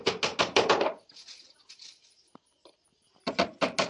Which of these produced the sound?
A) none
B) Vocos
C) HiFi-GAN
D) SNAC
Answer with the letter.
A